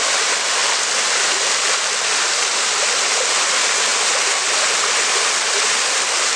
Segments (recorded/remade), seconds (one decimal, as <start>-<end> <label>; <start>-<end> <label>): 0.0-6.4 recorded